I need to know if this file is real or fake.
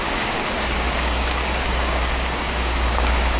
fake